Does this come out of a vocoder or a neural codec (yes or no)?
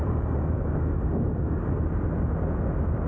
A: no